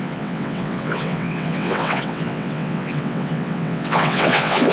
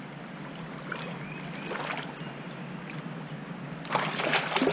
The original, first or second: second